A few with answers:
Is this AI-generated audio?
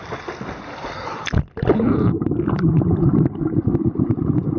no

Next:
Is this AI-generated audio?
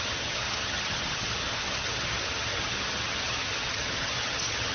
yes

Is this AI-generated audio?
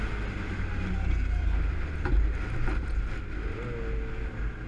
no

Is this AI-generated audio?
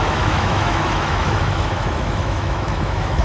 yes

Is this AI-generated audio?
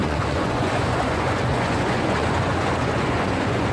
yes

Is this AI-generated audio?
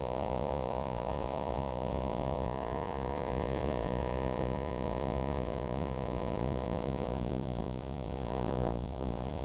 yes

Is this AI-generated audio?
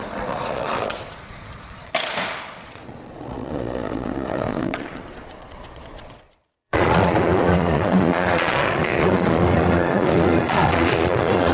yes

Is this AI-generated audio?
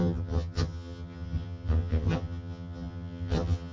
yes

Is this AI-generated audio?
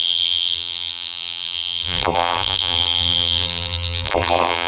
yes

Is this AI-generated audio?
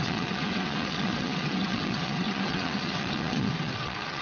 yes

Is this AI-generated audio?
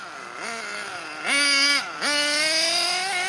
no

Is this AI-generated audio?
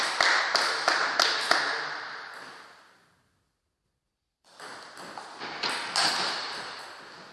no